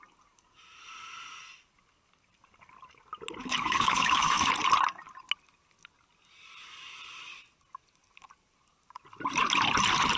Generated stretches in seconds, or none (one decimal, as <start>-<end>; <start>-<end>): 3.4-4.5